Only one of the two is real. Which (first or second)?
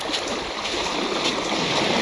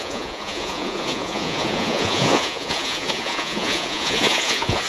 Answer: first